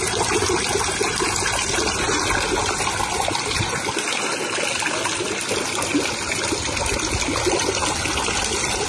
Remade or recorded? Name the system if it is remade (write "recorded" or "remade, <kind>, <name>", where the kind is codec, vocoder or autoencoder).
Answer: recorded